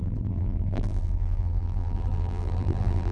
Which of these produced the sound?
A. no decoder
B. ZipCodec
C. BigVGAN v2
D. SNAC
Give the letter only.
C